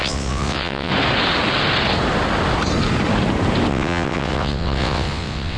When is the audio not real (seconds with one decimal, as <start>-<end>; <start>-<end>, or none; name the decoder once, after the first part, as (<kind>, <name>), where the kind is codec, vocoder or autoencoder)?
0.0-0.9 (vocoder, WaveNeXt); 3.7-5.6